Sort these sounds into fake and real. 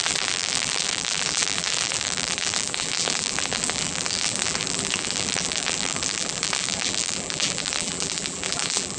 fake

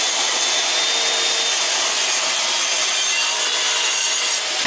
real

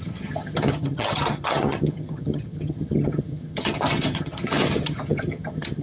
fake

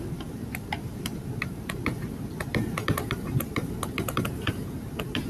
fake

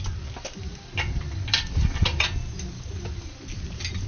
real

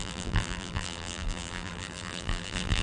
fake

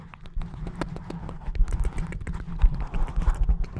real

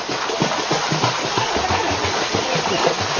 real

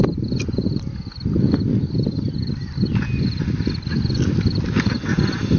real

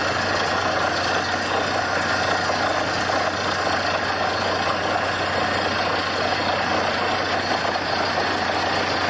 real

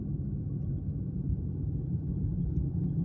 fake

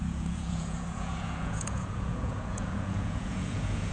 fake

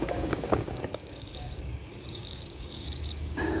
fake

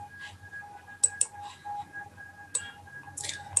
real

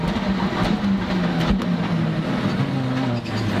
real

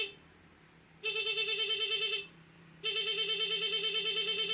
real